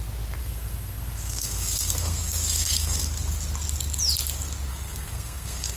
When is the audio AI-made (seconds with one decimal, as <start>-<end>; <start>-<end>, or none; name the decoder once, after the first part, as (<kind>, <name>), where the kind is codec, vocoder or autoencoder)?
0.4-3.0 (codec, SNAC); 4.7-5.8